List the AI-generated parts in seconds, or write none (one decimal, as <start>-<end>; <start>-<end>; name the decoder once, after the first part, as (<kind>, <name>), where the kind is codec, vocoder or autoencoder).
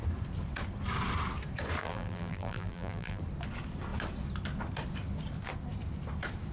1.8-3.2 (vocoder, BigVGAN v2)